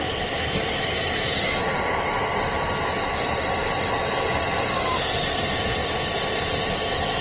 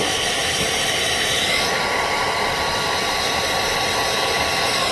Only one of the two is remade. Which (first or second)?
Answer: second